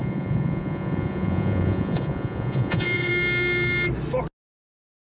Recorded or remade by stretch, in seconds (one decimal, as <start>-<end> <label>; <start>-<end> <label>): 0.0-3.1 remade; 3.1-5.1 recorded

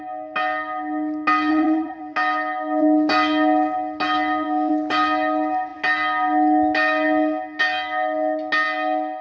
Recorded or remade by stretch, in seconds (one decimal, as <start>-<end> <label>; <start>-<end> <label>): 0.0-1.5 recorded; 1.5-2.0 remade; 2.0-9.2 recorded

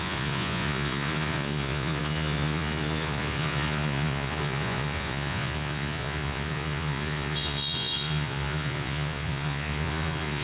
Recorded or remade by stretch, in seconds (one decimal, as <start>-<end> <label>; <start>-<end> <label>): 0.0-10.4 remade

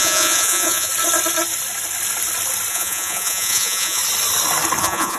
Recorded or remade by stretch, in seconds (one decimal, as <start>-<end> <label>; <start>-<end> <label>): 0.0-0.9 remade; 0.9-2.7 recorded; 2.7-4.0 remade; 4.0-4.8 recorded; 4.8-5.2 remade